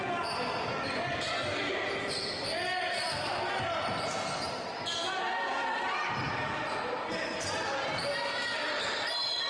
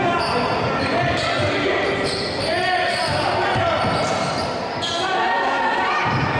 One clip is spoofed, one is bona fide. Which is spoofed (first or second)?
second